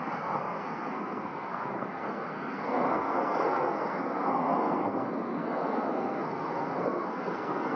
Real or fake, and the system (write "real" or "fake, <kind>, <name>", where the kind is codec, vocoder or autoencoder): fake, codec, SNAC